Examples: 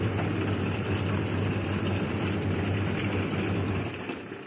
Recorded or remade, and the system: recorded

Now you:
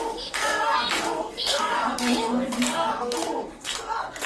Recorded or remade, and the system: remade, codec, SNAC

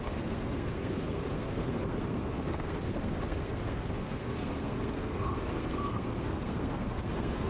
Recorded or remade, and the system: remade, codec, SNAC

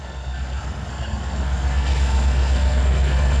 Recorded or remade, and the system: remade, codec, SNAC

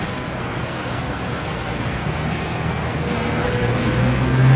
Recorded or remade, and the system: remade, codec, SNAC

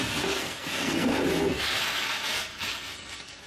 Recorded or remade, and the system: remade, codec, SNAC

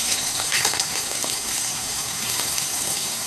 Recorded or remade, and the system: remade, codec, SNAC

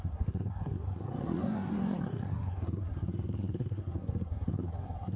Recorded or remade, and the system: remade, codec, SNAC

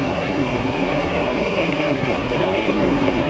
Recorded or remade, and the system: remade, codec, SNAC